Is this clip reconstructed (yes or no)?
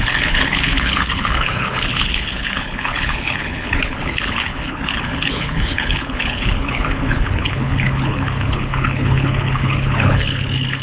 yes